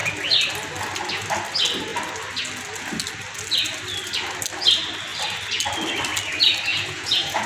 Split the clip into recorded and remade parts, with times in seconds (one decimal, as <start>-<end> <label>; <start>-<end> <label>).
0.0-6.7 recorded; 6.7-7.5 remade